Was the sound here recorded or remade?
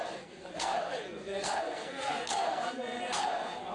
remade